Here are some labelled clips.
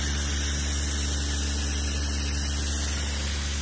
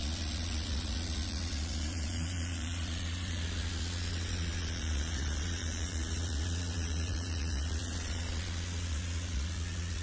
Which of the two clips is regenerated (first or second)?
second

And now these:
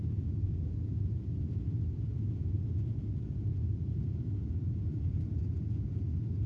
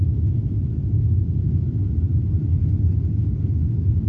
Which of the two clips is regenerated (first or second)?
first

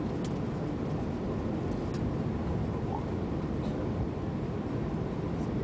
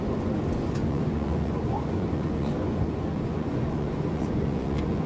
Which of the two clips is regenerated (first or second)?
second